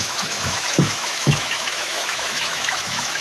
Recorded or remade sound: remade